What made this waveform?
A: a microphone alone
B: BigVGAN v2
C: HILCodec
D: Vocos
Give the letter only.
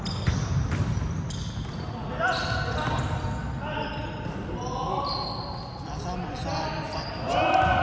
A